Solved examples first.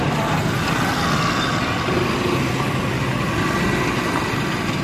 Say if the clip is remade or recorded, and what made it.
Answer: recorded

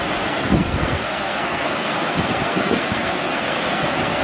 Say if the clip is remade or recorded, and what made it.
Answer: remade, codec, SNAC